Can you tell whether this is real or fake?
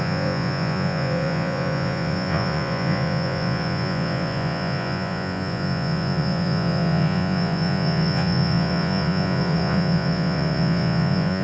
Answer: fake